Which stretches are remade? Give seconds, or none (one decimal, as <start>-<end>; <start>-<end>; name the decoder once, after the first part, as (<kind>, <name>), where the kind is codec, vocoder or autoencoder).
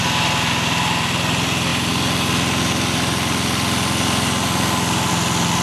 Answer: none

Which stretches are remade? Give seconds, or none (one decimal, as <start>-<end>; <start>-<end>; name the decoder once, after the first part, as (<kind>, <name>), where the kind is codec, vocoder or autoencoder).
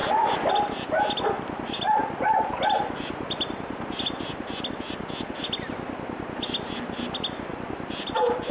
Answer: none